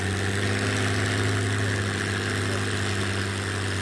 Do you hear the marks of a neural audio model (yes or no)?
no